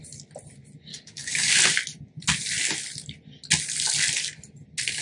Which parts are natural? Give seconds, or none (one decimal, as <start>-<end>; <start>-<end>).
0.0-0.9; 1.5-5.0